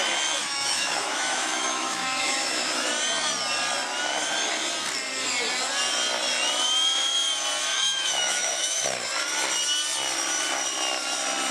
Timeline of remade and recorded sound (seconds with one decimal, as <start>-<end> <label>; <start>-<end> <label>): 0.0-0.4 recorded; 0.4-2.9 remade; 2.9-7.7 recorded; 7.7-8.8 remade; 8.8-11.5 recorded